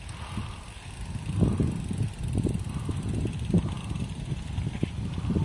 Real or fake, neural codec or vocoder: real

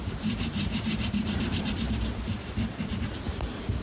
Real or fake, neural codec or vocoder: fake, vocoder, BigVGAN v2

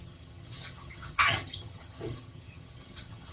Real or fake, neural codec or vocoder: fake, vocoder, HiFi-GAN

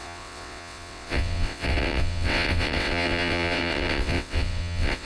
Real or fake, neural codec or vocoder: fake, vocoder, WaveNeXt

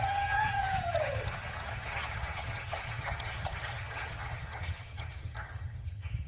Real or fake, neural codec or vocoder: fake, vocoder, HiFi-GAN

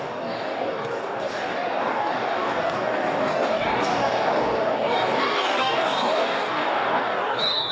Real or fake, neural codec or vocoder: fake, codec, DAC